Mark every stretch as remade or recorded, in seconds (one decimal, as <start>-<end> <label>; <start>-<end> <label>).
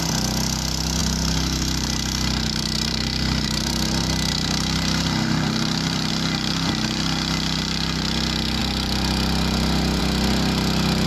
0.0-1.0 recorded; 1.0-6.1 remade; 6.1-11.1 recorded